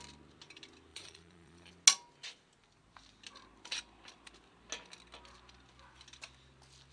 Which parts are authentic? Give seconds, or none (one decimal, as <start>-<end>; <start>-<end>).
0.0-0.9; 1.7-6.9